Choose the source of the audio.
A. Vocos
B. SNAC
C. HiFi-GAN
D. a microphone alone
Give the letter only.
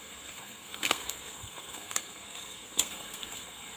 B